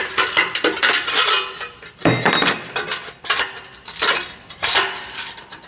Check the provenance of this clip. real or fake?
real